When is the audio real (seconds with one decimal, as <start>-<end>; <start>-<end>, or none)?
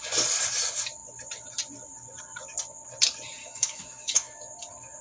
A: 0.0-3.4; 4.5-5.0